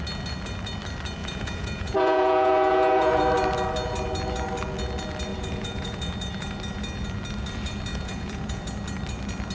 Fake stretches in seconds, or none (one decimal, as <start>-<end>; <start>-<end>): 1.2-3.2; 5.3-6.0; 7.9-8.6